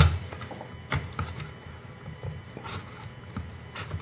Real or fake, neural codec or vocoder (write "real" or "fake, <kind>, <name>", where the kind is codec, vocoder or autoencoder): real